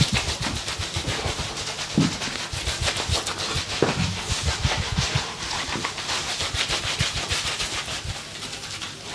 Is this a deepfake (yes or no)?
no